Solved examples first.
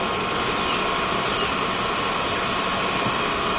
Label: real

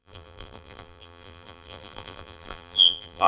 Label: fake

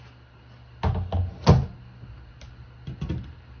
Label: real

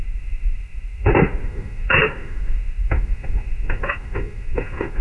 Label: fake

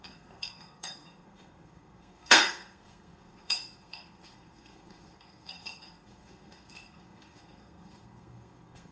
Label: fake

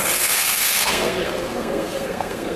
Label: fake